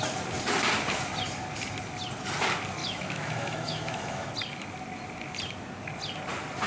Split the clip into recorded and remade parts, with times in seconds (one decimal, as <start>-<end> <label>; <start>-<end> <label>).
0.0-2.8 recorded; 2.8-4.3 remade; 4.3-6.7 recorded